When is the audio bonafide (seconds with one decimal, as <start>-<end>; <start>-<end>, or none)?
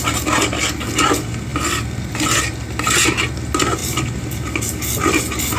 0.0-1.5; 2.4-3.8